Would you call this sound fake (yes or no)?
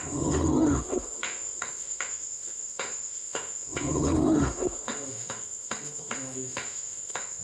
yes